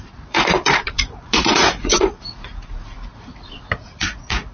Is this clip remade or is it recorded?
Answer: remade